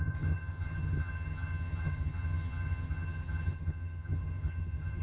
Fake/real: fake